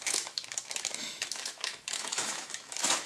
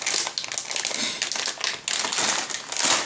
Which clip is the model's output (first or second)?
first